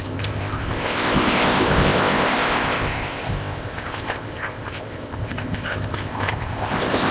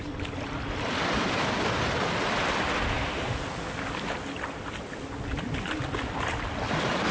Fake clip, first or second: first